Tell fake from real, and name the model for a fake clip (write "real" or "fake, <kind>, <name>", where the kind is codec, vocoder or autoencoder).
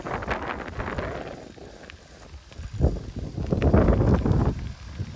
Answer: real